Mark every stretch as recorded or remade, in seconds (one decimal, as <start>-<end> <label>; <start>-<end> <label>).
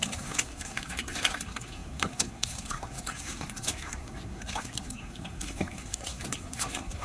0.0-7.0 remade